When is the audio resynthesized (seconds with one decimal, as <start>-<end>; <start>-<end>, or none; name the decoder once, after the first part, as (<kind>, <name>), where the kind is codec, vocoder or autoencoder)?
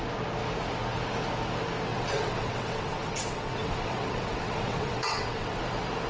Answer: 1.9-5.6 (vocoder, WaveNeXt)